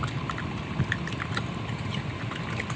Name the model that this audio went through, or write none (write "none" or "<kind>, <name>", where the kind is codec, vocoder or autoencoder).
none